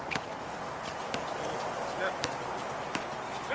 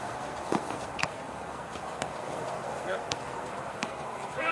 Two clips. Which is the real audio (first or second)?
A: first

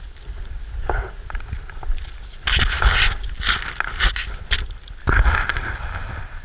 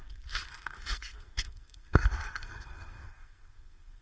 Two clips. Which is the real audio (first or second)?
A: first